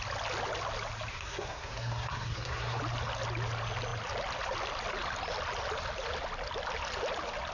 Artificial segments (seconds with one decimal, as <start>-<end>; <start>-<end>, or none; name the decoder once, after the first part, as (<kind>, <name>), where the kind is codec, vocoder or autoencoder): 1.1-2.8 (codec, SNAC)